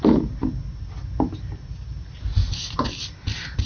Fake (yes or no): no